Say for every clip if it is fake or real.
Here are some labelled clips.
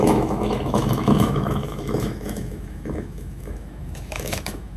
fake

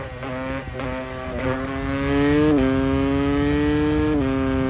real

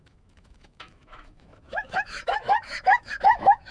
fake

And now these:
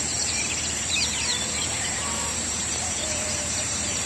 fake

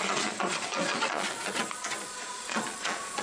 fake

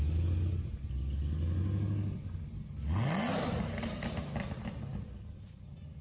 real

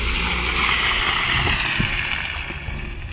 real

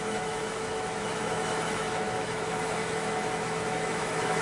fake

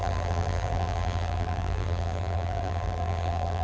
fake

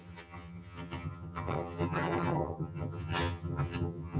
fake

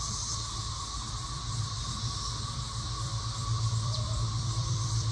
fake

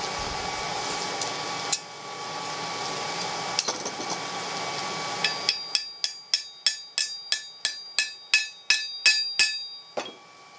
real